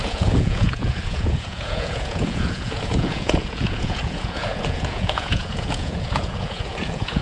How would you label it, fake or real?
fake